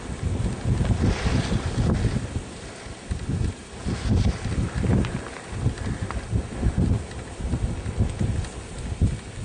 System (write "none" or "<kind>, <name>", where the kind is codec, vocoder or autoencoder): none